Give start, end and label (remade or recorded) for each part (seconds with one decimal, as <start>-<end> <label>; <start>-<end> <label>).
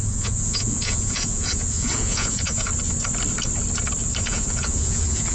0.0-2.7 remade; 2.7-4.2 recorded; 4.2-5.3 remade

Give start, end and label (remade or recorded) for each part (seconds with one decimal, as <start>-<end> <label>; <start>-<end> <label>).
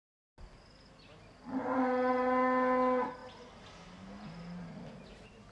0.0-5.5 recorded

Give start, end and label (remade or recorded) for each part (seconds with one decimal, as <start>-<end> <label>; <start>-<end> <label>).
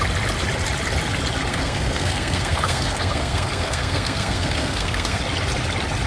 0.0-1.5 recorded; 1.5-5.2 remade; 5.2-6.1 recorded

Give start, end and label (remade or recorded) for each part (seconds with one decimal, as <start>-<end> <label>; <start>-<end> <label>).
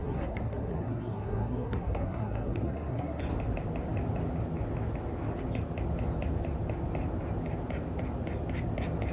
0.0-3.2 remade; 3.2-9.1 recorded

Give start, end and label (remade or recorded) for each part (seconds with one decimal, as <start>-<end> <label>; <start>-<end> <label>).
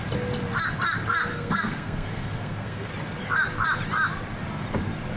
0.0-1.3 recorded; 1.3-2.9 remade; 2.9-5.2 recorded